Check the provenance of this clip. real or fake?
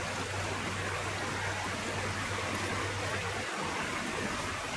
real